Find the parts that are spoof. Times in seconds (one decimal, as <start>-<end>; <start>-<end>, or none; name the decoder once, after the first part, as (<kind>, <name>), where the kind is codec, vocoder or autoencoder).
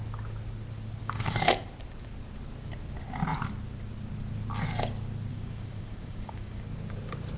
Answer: 1.0-1.6 (codec, DAC); 5.3-6.6